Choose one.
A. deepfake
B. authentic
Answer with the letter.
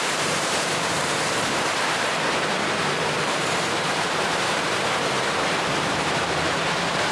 A